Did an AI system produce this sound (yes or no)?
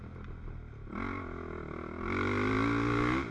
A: no